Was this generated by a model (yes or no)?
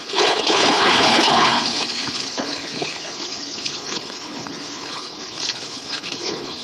yes